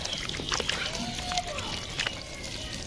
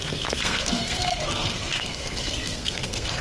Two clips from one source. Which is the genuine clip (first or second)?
first